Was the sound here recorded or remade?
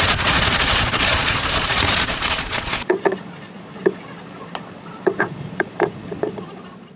remade